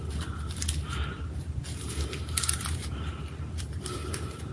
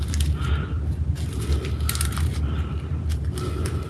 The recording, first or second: second